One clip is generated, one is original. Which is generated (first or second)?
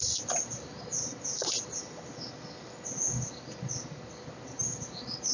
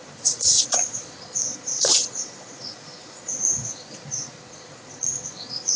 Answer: second